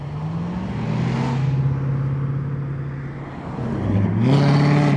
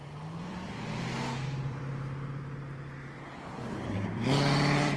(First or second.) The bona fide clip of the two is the first